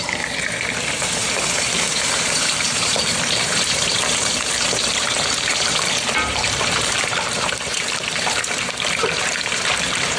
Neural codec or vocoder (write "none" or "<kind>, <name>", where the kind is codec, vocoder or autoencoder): vocoder, BigVGAN v2